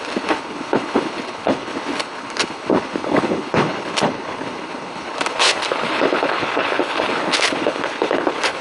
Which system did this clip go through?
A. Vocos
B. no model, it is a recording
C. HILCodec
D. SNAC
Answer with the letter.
C